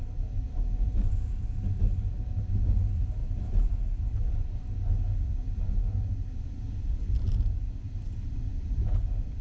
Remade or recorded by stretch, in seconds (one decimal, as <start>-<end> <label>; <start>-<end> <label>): 0.0-9.4 recorded